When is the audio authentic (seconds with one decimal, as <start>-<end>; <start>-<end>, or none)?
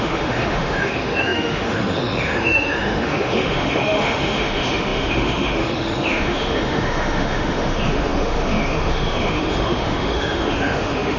none